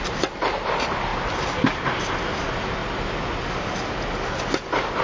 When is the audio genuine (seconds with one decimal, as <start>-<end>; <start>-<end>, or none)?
0.0-5.0